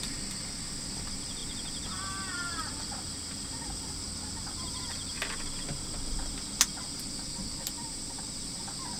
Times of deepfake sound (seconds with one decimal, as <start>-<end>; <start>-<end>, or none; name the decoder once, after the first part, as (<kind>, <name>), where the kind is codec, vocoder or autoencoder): none